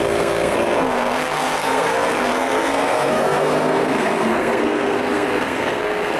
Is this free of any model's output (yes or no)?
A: no